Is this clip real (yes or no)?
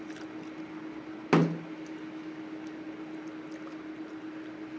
yes